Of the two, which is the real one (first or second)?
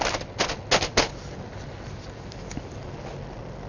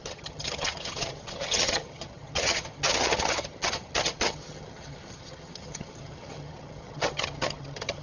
first